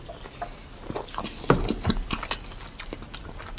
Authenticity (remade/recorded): recorded